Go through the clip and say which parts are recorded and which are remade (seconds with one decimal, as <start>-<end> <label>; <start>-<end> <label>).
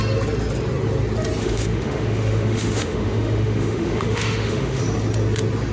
0.0-1.4 recorded; 1.4-4.8 remade; 4.8-5.7 recorded